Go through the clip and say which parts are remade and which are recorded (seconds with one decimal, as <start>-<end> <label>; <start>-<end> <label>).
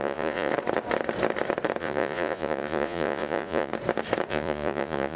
0.0-0.5 remade; 0.5-1.8 recorded; 1.8-3.7 remade; 3.7-4.3 recorded; 4.3-5.2 remade